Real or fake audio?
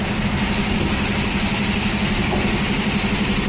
real